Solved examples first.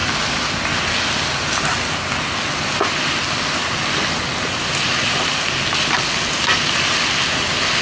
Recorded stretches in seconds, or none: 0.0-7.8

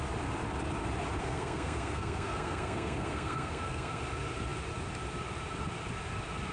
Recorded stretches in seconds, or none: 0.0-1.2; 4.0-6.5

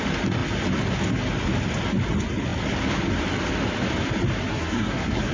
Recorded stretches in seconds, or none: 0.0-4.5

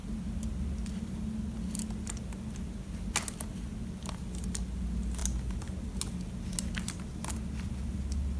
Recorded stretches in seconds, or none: 0.0-8.4

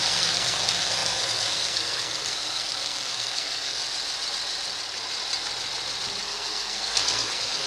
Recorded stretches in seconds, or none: 3.8-6.2